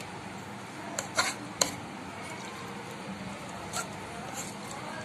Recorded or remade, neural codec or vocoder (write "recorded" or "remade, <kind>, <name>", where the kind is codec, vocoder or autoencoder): remade, vocoder, BigVGAN v2